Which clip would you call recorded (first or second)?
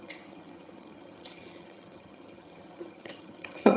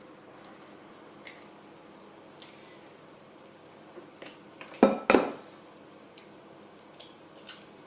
second